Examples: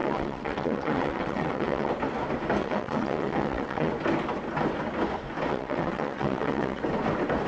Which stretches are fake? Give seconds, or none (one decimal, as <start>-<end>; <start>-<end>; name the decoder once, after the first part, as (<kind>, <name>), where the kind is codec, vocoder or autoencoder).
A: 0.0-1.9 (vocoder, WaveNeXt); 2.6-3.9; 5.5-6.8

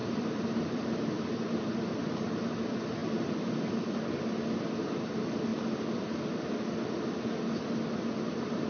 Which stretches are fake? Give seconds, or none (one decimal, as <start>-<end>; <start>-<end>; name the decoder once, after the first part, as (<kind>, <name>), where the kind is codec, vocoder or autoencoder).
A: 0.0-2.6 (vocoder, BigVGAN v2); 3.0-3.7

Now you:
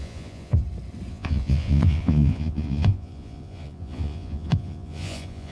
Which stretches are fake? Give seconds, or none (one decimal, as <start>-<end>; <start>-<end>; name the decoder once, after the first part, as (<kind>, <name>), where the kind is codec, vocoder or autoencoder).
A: 0.0-0.6 (vocoder, Vocos); 1.1-5.5